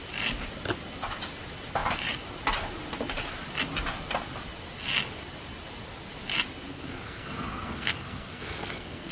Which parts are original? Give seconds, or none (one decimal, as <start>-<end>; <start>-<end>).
0.0-6.7